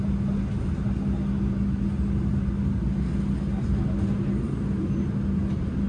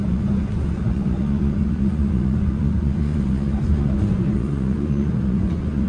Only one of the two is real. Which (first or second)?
first